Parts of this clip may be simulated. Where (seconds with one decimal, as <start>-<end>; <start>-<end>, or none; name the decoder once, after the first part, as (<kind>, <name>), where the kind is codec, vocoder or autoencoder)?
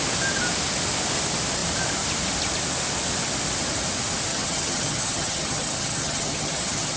4.3-7.0 (vocoder, HiFi-GAN)